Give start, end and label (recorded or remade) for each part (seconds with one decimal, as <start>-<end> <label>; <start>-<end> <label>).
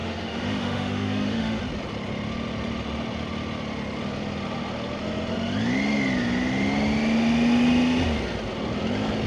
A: 0.0-1.6 remade; 1.6-9.3 recorded